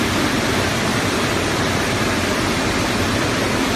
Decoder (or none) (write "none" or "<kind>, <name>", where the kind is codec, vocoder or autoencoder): vocoder, BigVGAN v2